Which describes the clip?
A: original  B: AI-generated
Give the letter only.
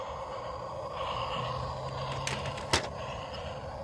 A